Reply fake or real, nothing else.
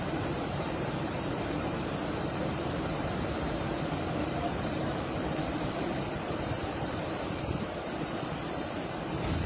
fake